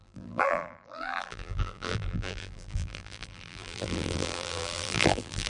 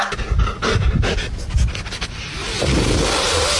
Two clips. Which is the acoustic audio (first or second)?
second